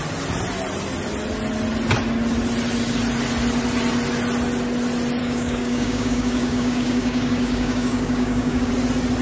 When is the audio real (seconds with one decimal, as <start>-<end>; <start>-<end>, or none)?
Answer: 0.0-5.2; 8.7-9.2